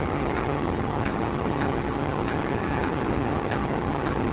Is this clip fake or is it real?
fake